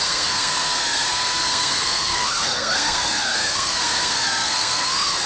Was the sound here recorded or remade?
remade